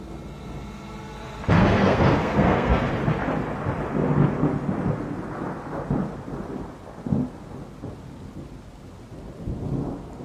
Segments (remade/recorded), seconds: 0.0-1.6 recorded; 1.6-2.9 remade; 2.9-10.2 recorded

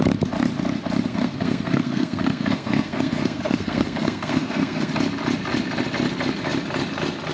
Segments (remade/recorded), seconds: 0.0-1.1 recorded; 1.1-4.9 remade; 4.9-7.3 recorded

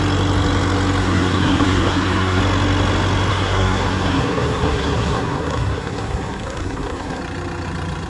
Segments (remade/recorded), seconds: 0.0-1.0 recorded; 1.0-2.4 remade; 2.4-3.3 recorded; 3.3-7.2 remade; 7.2-8.1 recorded

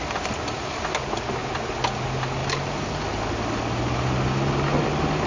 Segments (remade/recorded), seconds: 0.0-5.3 recorded

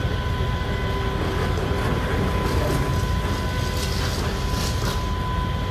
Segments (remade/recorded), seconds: 0.0-5.7 recorded

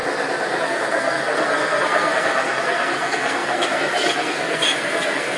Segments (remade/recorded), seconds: 0.0-0.6 recorded; 0.6-5.4 remade